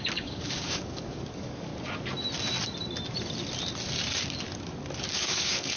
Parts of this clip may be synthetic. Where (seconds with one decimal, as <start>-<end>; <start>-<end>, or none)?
0.0-1.7; 5.1-5.8